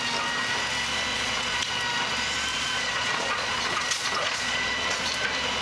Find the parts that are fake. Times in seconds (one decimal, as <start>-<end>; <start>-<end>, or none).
1.1-1.7; 2.5-5.1